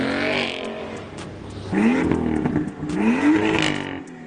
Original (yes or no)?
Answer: yes